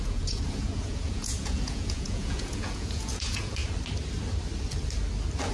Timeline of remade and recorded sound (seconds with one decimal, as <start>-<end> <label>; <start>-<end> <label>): 0.0-3.6 remade; 3.6-5.5 recorded